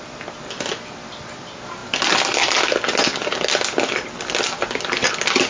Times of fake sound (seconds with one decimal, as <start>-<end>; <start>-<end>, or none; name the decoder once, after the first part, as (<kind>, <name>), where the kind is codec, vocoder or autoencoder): none